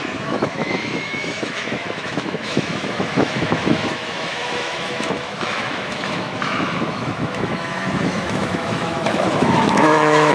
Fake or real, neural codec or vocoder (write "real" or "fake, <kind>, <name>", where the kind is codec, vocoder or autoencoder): fake, autoencoder, DAC-VAE